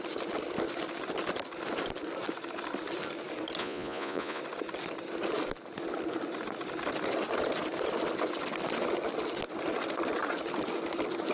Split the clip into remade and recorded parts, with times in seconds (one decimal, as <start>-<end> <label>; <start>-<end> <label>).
0.0-3.6 recorded; 3.6-4.4 remade; 4.4-11.3 recorded